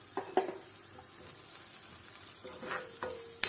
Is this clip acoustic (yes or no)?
yes